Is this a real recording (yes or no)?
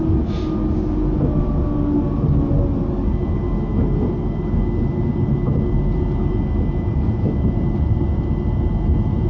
yes